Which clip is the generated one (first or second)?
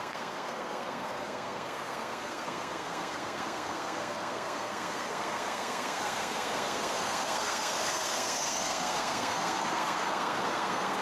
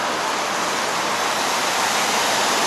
first